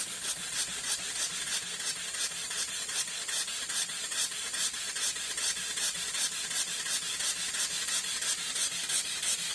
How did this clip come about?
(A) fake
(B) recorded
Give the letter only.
B